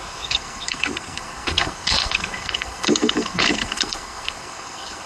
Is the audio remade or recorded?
remade